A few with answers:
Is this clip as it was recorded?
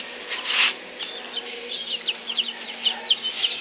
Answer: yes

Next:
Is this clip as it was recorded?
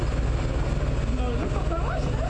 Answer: yes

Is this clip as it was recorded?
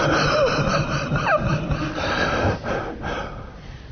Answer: yes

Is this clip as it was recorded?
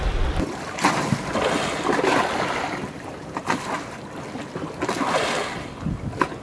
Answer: yes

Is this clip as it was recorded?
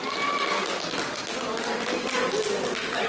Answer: yes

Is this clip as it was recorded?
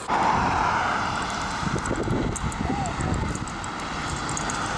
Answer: yes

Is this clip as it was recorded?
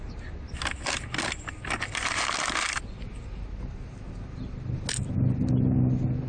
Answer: yes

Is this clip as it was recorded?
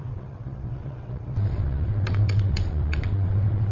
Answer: no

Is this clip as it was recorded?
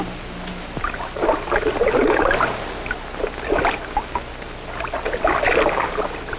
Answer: yes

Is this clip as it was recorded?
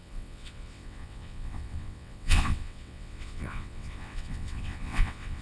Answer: no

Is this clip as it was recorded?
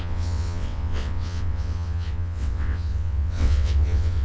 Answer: no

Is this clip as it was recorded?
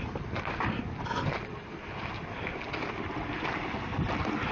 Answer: yes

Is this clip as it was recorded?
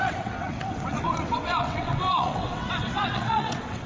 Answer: no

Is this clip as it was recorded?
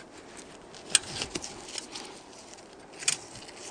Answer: yes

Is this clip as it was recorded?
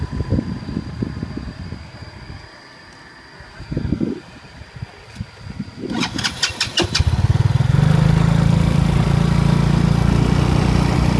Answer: yes